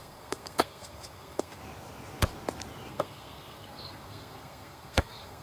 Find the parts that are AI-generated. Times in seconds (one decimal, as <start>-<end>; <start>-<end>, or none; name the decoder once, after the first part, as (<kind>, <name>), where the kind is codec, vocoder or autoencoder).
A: 0.0-1.6 (codec, SNAC); 2.9-5.4